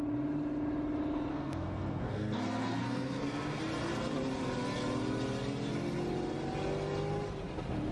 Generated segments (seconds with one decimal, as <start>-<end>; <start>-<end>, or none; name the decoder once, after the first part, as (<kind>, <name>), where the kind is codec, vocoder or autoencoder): 1.3-3.6 (codec, SNAC)